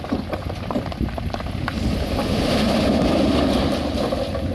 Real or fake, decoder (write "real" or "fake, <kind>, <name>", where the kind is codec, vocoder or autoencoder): real